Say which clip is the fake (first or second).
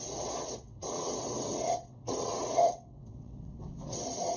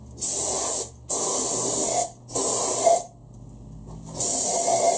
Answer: first